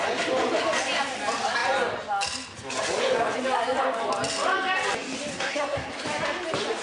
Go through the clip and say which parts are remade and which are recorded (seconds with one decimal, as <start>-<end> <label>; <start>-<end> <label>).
0.0-5.3 recorded; 5.3-5.9 remade; 5.9-6.8 recorded